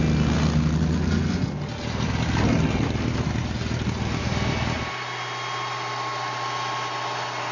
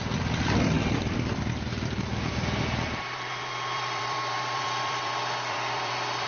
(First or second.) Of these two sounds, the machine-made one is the second